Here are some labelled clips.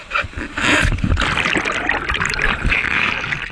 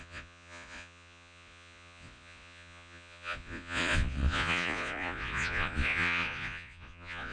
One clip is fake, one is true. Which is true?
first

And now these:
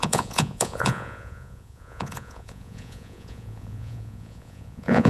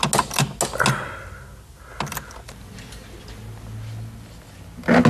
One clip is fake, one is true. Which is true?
second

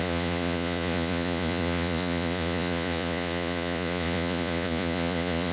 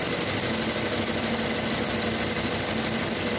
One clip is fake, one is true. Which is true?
second